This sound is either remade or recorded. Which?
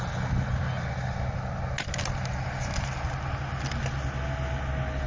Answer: recorded